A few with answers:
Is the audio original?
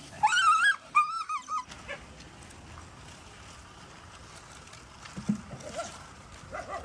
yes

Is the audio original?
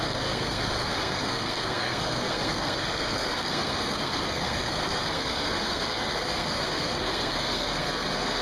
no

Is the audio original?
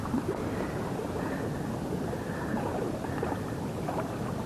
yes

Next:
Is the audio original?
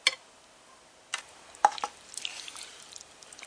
yes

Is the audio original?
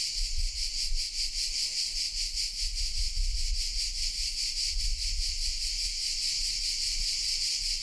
yes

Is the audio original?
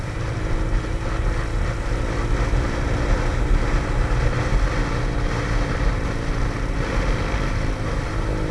yes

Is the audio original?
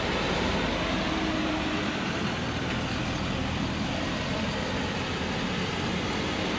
yes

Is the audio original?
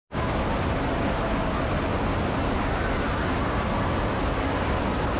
yes